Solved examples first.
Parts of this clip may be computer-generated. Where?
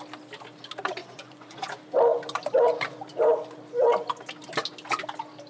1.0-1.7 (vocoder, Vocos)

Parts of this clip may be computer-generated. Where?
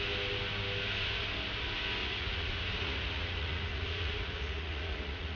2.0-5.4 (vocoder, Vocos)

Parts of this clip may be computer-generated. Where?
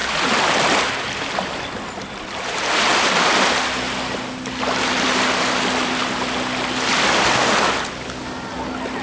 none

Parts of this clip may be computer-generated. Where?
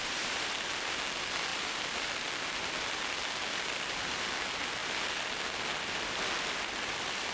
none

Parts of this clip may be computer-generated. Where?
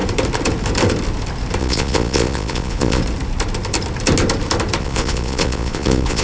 1.6-3.0 (vocoder, Vocos); 4.8-6.2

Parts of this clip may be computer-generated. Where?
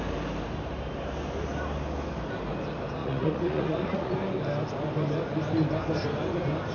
3.0-4.1 (vocoder, Vocos)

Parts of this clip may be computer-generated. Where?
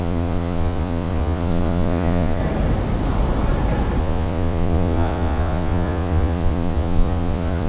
0.0-2.4 (vocoder, Vocos); 4.0-7.7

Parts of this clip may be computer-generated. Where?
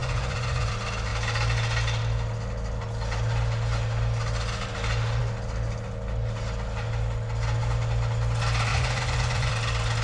0.0-0.7 (vocoder, Vocos); 8.7-9.5